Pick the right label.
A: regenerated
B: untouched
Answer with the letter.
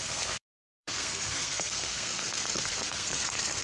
A